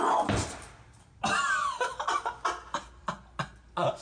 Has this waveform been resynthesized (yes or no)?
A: no